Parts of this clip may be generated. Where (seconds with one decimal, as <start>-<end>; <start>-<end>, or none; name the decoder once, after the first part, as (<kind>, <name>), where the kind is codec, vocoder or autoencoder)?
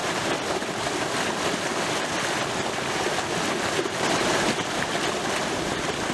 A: none